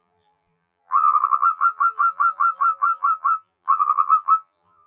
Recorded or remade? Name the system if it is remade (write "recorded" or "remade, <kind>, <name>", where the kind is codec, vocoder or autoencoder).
remade, vocoder, BigVGAN v2